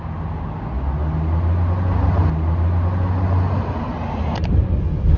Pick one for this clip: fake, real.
real